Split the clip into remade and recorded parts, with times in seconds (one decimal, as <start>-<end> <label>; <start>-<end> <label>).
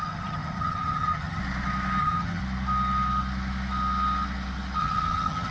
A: 0.0-1.4 remade; 1.4-2.0 recorded; 2.0-2.4 remade; 2.4-4.8 recorded; 4.8-5.5 remade